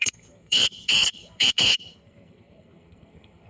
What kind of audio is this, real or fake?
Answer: fake